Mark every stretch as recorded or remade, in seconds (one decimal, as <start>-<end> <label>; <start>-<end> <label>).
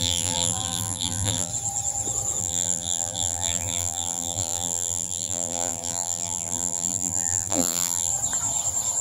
0.0-1.5 remade; 1.5-2.4 recorded; 2.4-8.1 remade; 8.1-9.0 recorded